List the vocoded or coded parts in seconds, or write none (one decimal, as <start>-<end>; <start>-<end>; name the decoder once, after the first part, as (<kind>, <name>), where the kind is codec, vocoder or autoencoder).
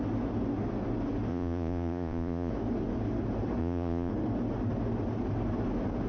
1.3-2.5 (vocoder, Vocos); 3.6-4.1